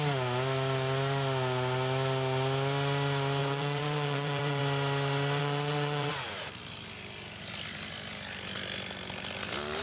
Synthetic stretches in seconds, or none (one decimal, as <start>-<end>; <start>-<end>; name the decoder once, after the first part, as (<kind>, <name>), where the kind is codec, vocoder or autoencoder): 3.4-4.6 (vocoder, WaveNeXt); 5.4-6.1